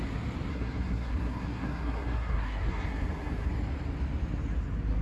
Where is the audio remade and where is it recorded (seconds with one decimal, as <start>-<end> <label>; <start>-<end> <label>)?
0.0-0.5 recorded; 0.5-3.5 remade; 3.5-5.0 recorded

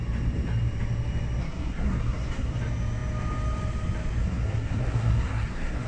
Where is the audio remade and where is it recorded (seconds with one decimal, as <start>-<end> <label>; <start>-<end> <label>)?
0.0-1.4 recorded; 1.4-2.6 remade; 2.6-4.2 recorded; 4.2-5.9 remade

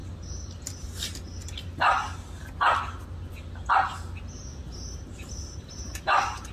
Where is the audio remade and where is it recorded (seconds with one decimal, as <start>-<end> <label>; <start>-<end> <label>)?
0.0-6.5 recorded

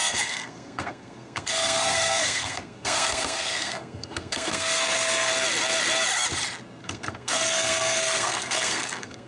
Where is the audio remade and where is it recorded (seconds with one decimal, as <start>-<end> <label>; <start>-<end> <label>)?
0.0-5.3 remade; 5.3-6.8 recorded; 6.8-9.3 remade

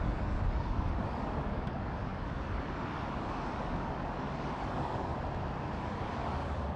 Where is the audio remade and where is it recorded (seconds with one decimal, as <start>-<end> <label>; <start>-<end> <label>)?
0.0-5.1 remade; 5.1-5.8 recorded; 5.8-6.8 remade

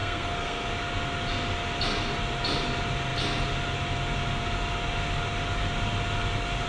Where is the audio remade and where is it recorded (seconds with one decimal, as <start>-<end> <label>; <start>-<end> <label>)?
0.0-0.7 remade; 0.7-6.7 recorded